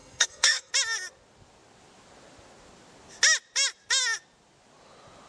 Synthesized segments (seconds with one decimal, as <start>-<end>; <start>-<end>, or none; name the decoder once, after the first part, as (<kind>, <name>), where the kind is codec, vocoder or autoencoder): 0.0-0.7 (codec, SNAC)